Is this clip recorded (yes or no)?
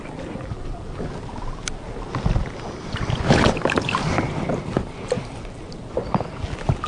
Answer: yes